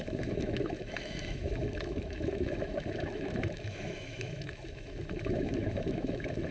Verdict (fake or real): fake